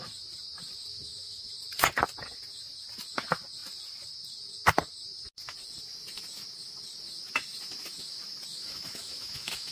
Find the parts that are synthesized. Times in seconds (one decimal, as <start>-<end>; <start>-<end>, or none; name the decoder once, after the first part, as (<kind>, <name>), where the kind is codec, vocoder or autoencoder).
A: 0.9-1.5 (autoencoder, DAC-VAE); 8.5-9.7